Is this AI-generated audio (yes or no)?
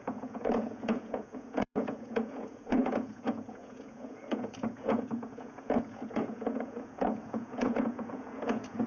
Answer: yes